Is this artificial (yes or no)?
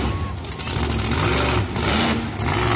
no